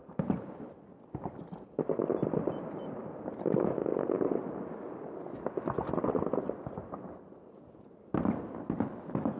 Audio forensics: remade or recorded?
recorded